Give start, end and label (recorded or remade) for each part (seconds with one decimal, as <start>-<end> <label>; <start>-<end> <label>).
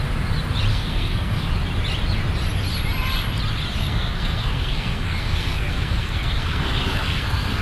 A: 0.0-0.7 recorded; 0.7-1.5 remade; 1.5-3.8 recorded; 3.8-7.6 remade